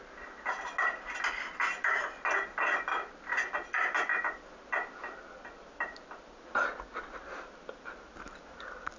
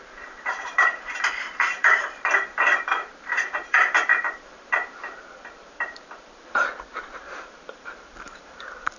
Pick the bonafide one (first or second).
first